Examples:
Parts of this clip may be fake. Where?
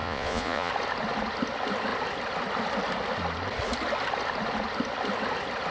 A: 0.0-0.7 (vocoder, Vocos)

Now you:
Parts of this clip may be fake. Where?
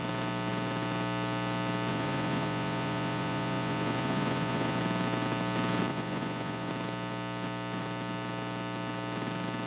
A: 1.9-4.8 (vocoder, Vocos); 5.9-6.7